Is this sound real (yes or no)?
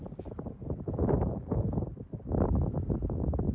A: yes